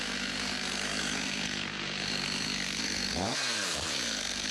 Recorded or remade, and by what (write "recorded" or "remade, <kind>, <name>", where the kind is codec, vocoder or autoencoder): remade, codec, SNAC